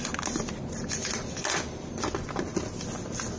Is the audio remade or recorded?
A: recorded